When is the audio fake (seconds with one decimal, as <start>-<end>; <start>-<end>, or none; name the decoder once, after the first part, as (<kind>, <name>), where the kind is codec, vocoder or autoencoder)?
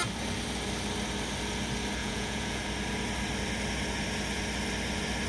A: 2.0-2.6 (vocoder, Vocos)